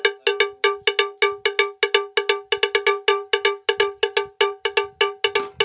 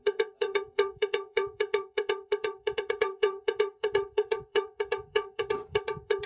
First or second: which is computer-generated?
second